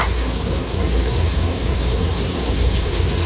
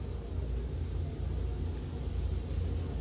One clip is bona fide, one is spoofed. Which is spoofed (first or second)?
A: first